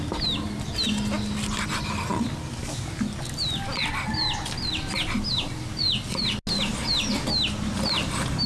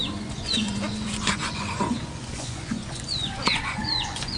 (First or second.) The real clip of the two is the first